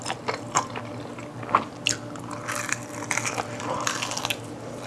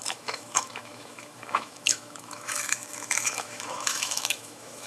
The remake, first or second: second